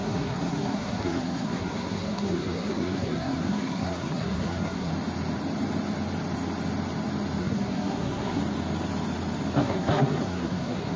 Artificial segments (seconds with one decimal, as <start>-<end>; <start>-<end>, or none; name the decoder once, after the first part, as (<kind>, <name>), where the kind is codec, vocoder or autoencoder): 0.0-4.9 (codec, SNAC); 7.4-8.4; 9.6-11.0

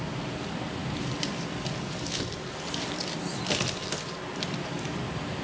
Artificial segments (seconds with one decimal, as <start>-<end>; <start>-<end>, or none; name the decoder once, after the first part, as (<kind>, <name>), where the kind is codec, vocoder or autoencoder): none

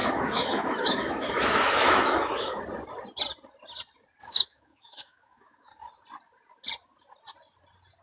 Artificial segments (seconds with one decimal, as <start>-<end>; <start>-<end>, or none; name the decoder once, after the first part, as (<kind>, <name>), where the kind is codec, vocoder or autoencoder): 0.0-2.6 (autoencoder, DAC-VAE); 4.3-5.7

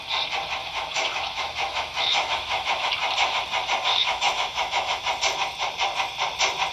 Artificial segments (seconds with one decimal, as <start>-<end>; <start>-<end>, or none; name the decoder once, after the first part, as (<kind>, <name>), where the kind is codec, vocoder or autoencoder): 0.6-2.9 (autoencoder, DAC-VAE); 3.9-5.0